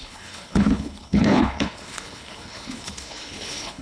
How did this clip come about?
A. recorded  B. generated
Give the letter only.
B